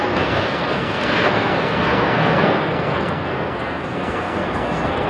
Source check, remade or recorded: remade